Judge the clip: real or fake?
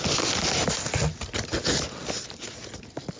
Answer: real